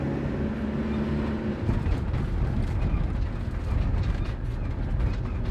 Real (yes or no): yes